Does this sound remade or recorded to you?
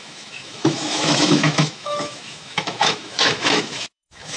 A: remade